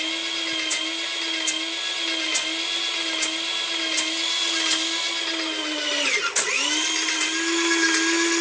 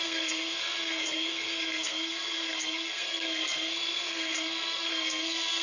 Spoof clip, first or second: second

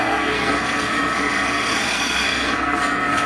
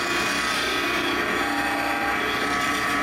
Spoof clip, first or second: first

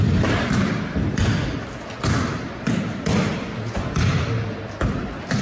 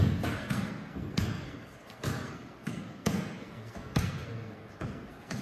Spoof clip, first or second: second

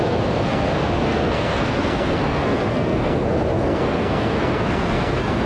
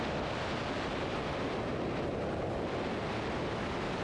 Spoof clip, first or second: first